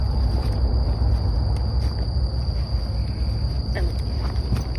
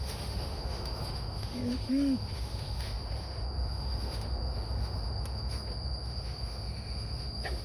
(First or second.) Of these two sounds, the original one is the first